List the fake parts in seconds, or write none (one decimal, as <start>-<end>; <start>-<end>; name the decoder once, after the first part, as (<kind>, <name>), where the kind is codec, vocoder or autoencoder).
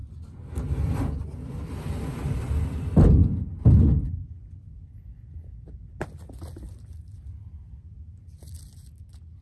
none